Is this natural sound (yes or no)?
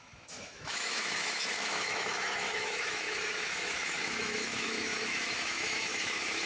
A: no